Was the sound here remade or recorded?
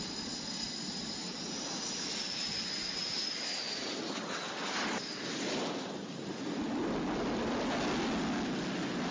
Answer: recorded